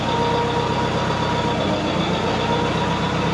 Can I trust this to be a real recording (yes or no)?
yes